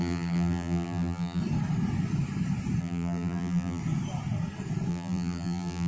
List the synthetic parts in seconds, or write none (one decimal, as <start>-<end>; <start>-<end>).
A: 0.0-1.4; 2.8-3.8; 4.9-5.9